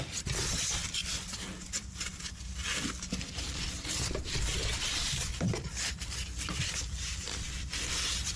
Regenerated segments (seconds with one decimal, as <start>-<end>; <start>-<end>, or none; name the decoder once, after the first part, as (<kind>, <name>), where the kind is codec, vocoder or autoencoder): 0.0-1.0 (vocoder, BigVGAN v2); 3.3-8.4